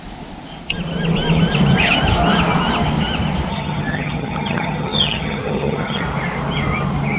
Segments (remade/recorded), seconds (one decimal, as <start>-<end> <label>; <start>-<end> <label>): 0.0-3.5 recorded; 3.5-6.0 remade; 6.0-7.2 recorded